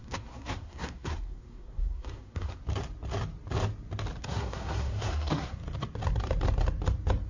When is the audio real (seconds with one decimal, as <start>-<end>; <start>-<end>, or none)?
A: 2.6-4.2; 5.6-7.3